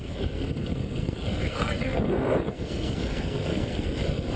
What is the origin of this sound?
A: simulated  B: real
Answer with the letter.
A